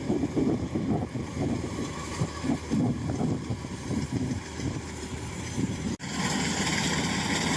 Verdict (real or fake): fake